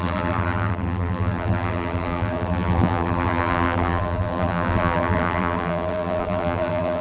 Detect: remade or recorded remade